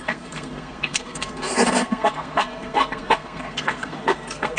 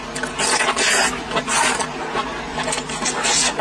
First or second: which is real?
second